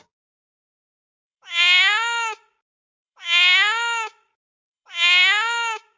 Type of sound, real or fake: fake